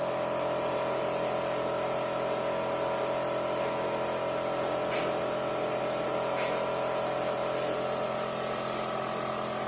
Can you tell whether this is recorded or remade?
recorded